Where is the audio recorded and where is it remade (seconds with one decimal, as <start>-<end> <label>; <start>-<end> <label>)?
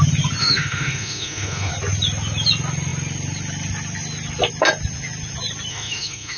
0.0-0.4 recorded; 0.4-1.7 remade; 1.7-5.7 recorded; 5.7-6.4 remade